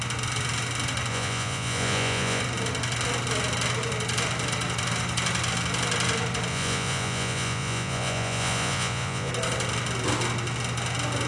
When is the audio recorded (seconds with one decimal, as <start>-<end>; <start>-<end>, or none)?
0.0-1.1; 2.4-6.5; 9.3-11.3